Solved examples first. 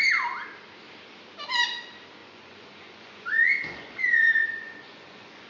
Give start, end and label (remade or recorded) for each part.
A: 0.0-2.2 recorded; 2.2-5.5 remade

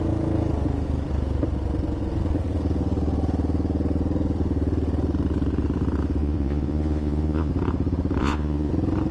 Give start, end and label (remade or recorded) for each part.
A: 0.0-6.2 recorded; 6.2-7.5 remade; 7.5-8.2 recorded; 8.2-8.7 remade; 8.7-9.1 recorded

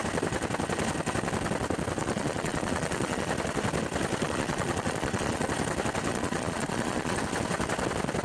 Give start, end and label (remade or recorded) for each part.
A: 0.0-2.0 recorded; 2.0-3.3 remade; 3.3-4.2 recorded; 4.2-5.5 remade; 5.5-6.1 recorded; 6.1-7.2 remade; 7.2-8.2 recorded

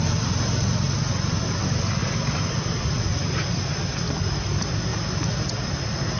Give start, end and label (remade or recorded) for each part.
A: 0.0-6.2 recorded